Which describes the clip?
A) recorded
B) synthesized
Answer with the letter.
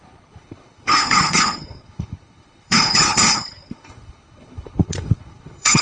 B